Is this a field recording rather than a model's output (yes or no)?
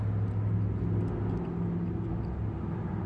yes